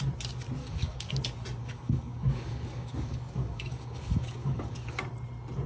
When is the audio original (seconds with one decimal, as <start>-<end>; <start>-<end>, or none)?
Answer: 0.0-0.6; 1.1-1.6; 5.0-5.7